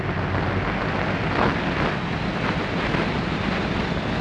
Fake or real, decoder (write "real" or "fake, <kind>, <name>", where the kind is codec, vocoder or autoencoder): real